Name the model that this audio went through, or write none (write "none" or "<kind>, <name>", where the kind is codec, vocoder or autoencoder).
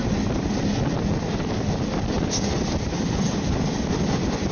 none